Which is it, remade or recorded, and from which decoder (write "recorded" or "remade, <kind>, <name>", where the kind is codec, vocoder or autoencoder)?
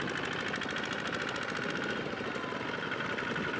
recorded